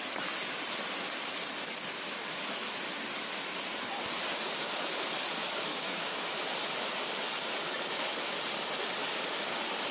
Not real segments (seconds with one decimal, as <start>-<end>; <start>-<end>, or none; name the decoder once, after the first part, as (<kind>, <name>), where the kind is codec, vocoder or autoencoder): 5.7-6.3 (codec, DAC)